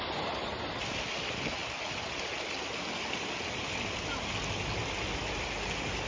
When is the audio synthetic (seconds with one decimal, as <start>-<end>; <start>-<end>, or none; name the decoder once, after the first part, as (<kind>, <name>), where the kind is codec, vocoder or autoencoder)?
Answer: none